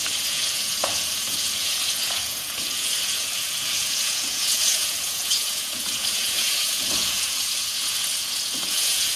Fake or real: fake